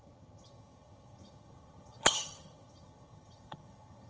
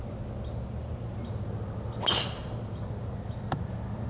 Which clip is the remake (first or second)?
first